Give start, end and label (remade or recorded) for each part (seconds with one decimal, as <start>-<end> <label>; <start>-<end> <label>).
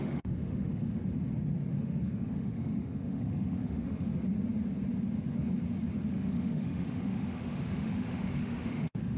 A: 0.0-1.0 remade; 1.0-1.7 recorded; 1.7-4.1 remade; 4.1-6.1 recorded; 6.1-9.2 remade